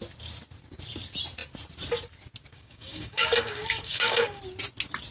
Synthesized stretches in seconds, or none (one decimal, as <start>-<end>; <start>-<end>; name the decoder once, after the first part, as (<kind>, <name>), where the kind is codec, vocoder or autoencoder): 2.5-4.4 (codec, DAC)